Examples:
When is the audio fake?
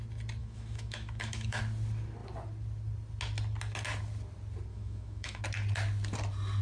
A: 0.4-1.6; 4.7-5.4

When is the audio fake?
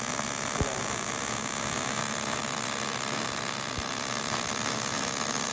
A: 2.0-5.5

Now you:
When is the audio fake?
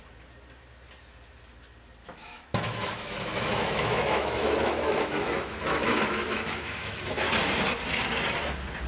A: 2.0-7.0